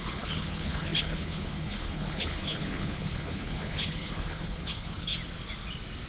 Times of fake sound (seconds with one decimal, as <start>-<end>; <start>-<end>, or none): 0.0-5.1